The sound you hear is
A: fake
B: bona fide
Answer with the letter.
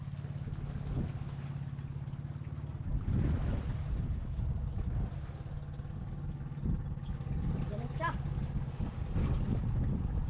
B